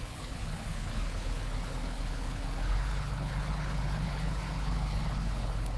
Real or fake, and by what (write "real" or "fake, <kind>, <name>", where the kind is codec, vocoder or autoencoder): fake, codec, HILCodec